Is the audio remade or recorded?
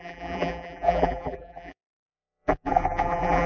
remade